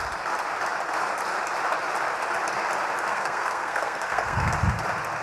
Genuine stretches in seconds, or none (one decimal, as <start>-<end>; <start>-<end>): 0.0-3.1; 4.5-5.2